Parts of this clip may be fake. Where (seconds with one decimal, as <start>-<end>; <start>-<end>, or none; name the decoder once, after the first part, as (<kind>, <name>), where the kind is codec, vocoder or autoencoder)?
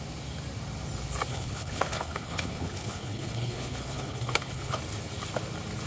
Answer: 1.3-4.8 (codec, HILCodec)